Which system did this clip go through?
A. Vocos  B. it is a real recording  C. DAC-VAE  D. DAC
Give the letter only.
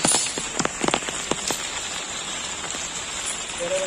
B